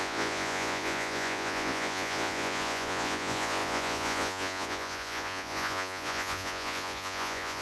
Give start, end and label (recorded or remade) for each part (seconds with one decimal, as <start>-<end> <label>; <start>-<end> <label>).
0.0-7.6 remade